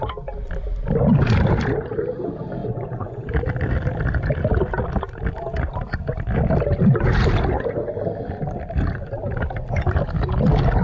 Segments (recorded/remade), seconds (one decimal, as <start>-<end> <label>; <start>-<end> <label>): 0.0-2.6 recorded; 2.6-3.3 remade; 3.3-10.8 recorded